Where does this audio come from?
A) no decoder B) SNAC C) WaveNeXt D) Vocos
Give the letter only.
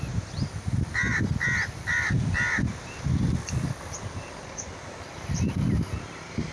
A